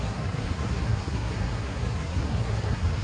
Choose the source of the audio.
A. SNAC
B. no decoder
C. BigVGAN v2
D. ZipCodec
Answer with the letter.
A